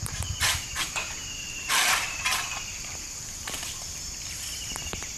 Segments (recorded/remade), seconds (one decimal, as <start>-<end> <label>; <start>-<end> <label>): 0.0-5.2 remade